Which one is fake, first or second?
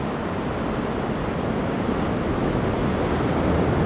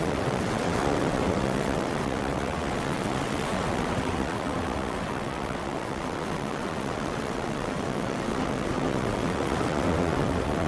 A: second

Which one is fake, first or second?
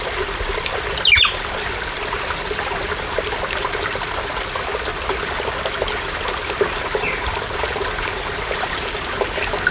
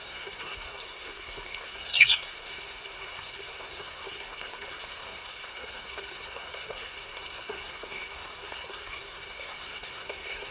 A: second